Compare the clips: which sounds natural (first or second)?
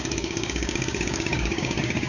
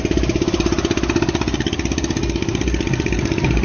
second